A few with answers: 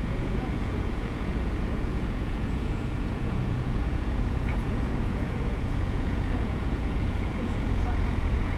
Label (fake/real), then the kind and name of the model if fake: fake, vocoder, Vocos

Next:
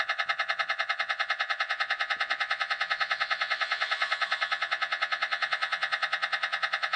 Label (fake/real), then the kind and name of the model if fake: fake, vocoder, Vocos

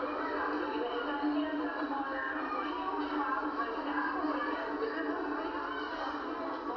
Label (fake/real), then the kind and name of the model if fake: real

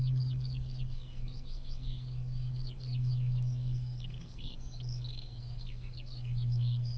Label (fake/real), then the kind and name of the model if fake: fake, codec, SNAC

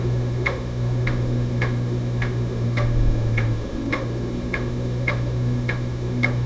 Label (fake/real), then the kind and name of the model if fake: fake, autoencoder, DAC-VAE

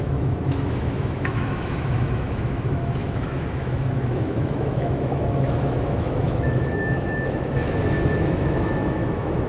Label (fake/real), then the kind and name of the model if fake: fake, autoencoder, DAC-VAE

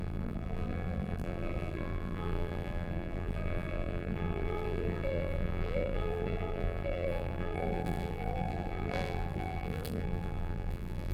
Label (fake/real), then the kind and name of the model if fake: fake, vocoder, BigVGAN v2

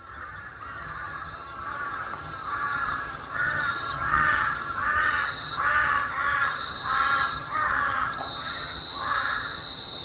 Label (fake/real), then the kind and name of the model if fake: fake, vocoder, HiFi-GAN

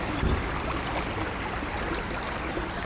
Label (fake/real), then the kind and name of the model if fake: real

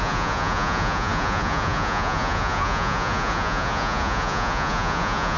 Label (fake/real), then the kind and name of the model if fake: fake, vocoder, Vocos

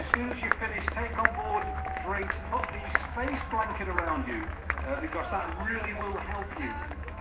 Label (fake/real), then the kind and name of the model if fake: fake, autoencoder, DAC-VAE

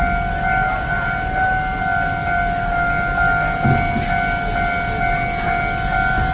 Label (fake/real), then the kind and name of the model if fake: real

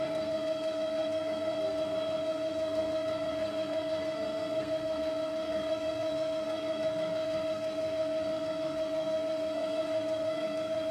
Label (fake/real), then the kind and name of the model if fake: fake, codec, SNAC